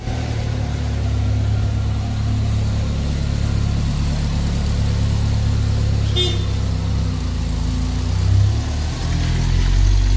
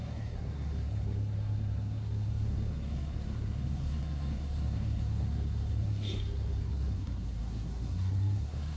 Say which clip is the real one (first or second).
first